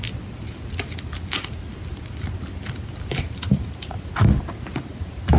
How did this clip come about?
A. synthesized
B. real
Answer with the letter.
B